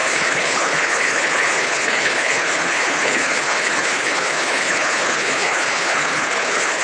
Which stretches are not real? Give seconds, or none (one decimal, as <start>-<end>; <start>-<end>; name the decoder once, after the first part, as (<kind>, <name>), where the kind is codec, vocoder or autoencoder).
0.0-6.8 (codec, HILCodec)